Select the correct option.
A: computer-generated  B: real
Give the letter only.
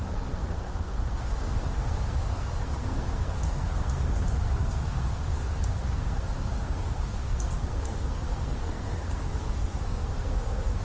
A